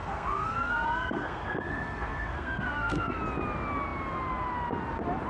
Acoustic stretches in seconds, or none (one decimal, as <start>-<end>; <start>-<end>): 3.2-5.3